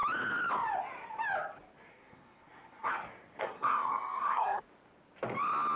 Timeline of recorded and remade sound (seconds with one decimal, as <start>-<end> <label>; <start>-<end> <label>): 0.0-1.9 recorded; 1.9-2.9 remade; 2.9-3.4 recorded; 3.4-4.6 remade; 4.6-5.8 recorded